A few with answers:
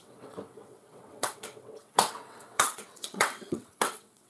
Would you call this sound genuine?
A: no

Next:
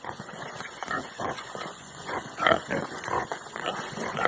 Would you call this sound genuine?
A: no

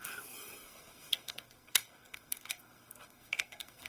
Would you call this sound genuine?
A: no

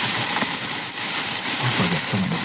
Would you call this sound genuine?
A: no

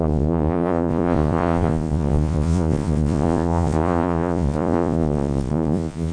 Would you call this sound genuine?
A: no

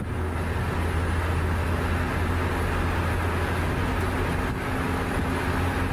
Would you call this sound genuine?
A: yes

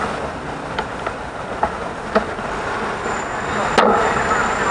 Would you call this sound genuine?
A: yes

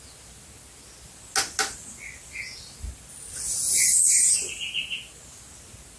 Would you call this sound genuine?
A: yes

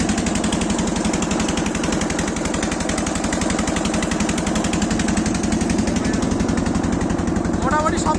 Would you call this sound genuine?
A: yes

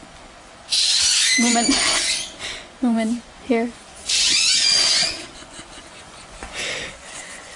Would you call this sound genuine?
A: no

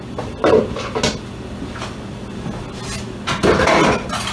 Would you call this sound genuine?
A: yes